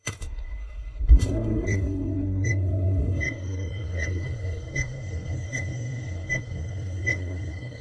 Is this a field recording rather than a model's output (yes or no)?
no